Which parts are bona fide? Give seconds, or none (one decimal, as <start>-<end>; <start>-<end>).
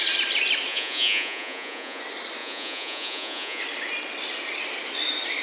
0.0-0.7; 2.0-2.4; 3.6-5.4